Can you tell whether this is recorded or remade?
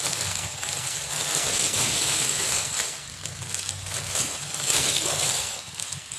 remade